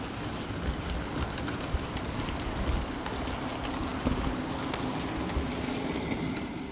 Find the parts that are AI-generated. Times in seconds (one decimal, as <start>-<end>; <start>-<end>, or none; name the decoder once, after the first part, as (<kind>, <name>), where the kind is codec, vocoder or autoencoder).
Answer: none